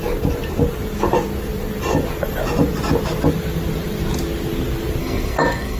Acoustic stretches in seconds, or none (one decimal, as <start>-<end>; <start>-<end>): 0.0-5.0

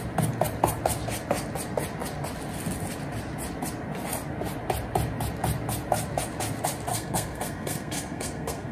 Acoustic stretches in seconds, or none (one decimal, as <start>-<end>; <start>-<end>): 0.0-6.9